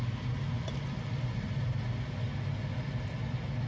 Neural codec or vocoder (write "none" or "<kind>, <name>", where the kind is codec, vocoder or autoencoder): none